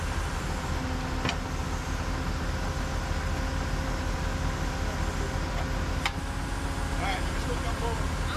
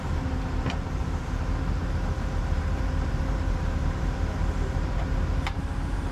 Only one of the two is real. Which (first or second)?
first